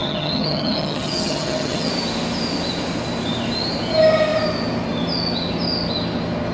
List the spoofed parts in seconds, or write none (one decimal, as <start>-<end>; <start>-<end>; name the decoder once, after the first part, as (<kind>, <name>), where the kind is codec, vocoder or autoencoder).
0.0-1.9 (vocoder, HiFi-GAN)